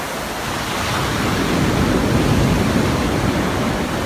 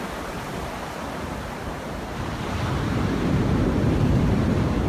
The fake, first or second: second